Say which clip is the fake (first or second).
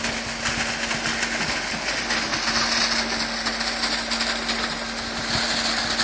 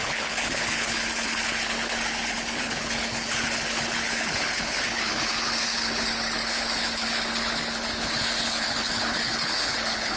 second